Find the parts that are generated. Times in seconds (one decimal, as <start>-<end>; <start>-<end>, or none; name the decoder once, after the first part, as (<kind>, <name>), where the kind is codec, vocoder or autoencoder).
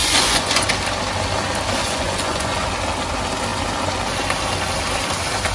0.0-0.7 (vocoder, Vocos); 1.8-2.7